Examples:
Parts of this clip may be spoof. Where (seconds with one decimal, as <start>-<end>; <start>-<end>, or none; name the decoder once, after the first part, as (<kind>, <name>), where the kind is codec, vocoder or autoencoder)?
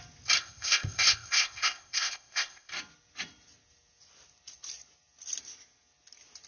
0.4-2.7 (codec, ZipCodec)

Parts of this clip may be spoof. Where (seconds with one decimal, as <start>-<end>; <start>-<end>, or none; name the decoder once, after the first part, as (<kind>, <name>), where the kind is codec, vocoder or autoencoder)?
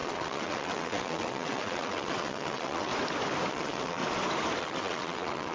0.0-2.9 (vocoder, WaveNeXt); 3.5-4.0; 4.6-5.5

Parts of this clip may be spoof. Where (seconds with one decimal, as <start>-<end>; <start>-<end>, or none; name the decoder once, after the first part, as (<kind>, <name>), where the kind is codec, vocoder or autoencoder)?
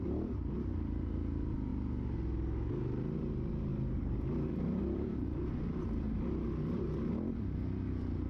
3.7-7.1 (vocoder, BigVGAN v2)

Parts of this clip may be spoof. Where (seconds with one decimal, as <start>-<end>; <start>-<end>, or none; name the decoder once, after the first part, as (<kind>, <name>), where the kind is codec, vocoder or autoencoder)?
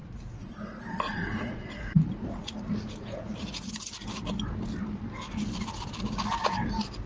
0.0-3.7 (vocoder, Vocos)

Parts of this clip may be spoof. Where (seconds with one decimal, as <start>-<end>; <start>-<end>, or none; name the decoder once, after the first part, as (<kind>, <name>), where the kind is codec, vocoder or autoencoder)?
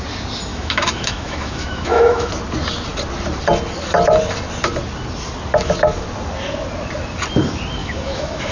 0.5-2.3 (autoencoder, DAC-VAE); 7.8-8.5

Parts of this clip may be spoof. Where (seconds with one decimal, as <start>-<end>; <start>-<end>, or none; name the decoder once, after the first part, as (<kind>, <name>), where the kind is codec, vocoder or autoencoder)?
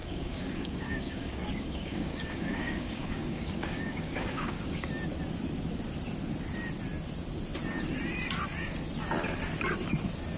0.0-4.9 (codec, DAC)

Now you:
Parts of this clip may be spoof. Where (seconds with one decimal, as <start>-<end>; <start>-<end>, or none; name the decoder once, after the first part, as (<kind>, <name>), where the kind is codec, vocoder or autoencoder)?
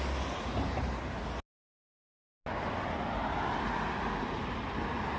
none